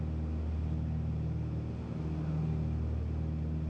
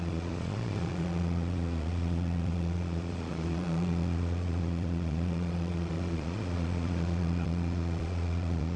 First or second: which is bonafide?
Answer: first